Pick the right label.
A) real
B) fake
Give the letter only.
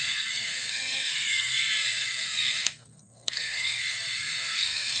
B